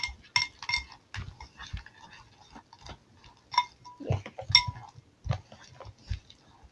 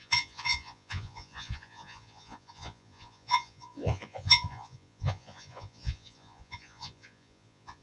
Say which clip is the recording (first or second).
first